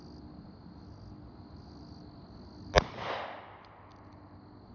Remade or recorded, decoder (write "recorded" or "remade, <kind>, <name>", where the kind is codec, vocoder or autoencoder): recorded